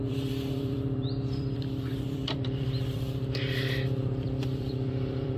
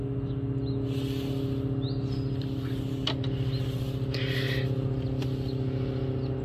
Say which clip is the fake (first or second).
first